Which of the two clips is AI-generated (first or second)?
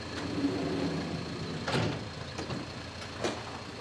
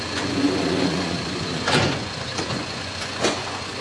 second